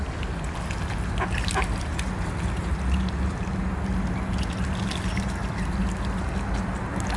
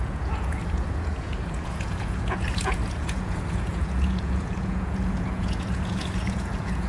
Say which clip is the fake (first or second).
second